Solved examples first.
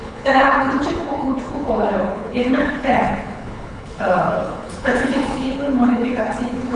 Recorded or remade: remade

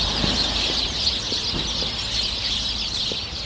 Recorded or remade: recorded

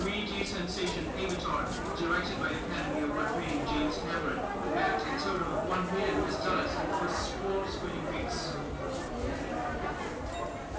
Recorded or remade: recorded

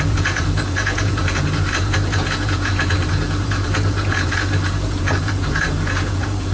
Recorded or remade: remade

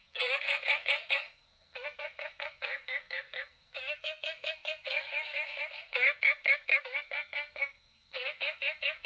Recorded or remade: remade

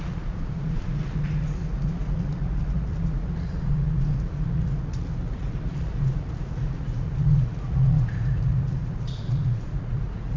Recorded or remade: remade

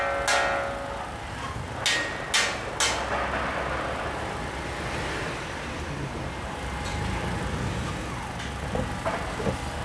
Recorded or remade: recorded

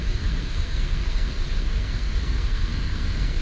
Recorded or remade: remade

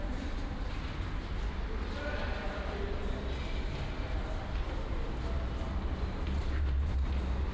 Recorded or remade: recorded